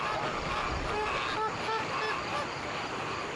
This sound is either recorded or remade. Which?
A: recorded